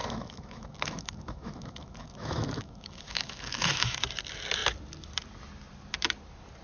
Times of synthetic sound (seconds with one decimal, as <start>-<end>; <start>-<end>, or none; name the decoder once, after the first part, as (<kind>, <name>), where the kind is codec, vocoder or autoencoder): 0.0-4.0 (autoencoder, DAC-VAE)